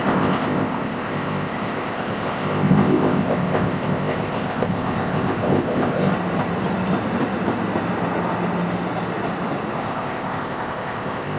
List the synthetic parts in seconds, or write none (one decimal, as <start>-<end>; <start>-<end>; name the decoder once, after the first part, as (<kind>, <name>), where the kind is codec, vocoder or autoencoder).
0.0-6.1 (codec, ZipCodec); 9.8-11.4